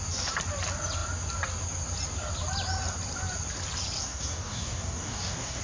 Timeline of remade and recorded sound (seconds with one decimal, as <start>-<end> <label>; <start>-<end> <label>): 0.0-4.0 recorded; 4.0-5.6 remade